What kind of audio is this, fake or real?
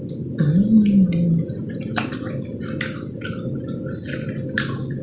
real